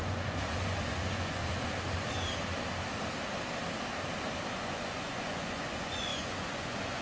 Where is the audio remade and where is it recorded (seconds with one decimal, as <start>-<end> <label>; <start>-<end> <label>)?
0.0-1.4 remade; 1.4-4.5 recorded; 4.5-7.0 remade

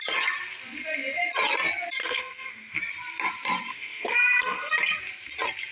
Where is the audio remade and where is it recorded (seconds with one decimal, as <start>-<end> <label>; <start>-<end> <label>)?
0.0-2.0 recorded; 2.0-2.8 remade; 2.8-3.7 recorded; 3.7-4.7 remade; 4.7-5.7 recorded

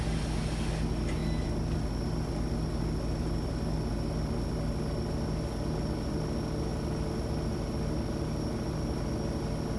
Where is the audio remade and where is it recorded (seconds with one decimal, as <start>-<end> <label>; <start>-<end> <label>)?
0.0-9.8 recorded